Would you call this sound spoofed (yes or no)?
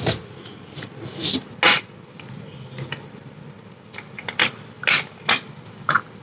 no